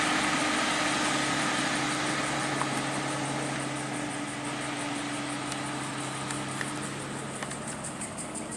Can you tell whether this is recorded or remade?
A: recorded